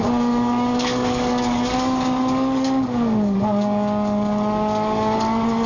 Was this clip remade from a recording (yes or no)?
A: yes